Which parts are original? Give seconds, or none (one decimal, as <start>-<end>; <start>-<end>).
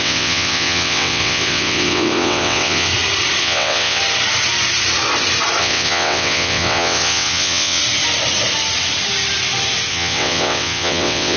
2.9-3.4; 4.0-5.6; 7.8-9.9